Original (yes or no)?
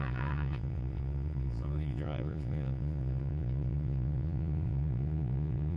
no